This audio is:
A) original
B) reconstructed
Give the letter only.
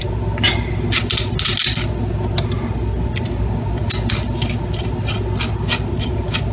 A